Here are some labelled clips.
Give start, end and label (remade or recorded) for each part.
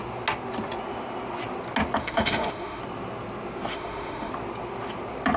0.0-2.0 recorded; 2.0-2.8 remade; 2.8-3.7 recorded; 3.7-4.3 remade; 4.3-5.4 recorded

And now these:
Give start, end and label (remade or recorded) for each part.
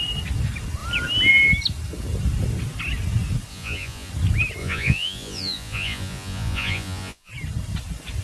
0.0-3.5 recorded; 3.5-4.1 remade; 4.1-4.6 recorded; 4.6-7.3 remade; 7.3-8.2 recorded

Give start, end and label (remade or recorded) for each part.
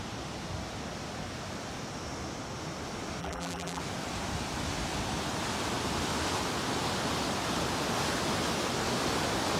0.0-3.2 recorded; 3.2-3.8 remade; 3.8-9.6 recorded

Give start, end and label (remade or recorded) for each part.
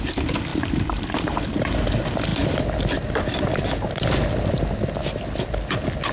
0.0-6.1 recorded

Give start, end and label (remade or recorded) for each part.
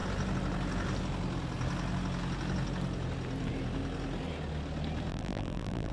0.0-5.1 recorded; 5.1-5.9 remade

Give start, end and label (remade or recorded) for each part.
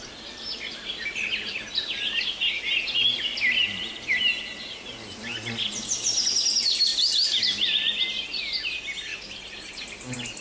0.0-10.4 recorded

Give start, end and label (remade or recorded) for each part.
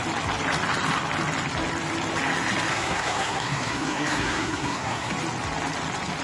0.0-2.7 recorded; 2.7-5.1 remade; 5.1-6.2 recorded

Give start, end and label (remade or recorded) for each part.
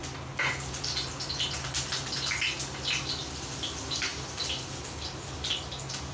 0.0-6.1 recorded